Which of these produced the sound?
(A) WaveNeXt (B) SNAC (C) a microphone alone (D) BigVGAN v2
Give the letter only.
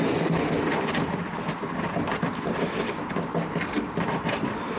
C